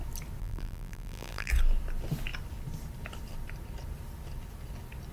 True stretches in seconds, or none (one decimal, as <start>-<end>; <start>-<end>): 0.0-0.4; 1.5-5.1